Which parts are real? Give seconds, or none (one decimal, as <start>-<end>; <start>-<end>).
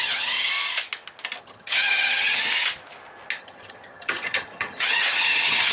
0.5-1.4; 2.4-3.4